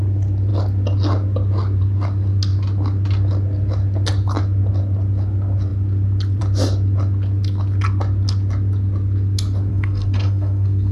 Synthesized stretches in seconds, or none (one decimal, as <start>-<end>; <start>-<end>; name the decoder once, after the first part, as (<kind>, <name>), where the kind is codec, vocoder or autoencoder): 9.7-10.9 (codec, SNAC)